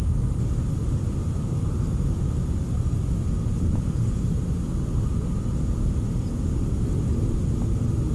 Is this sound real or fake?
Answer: real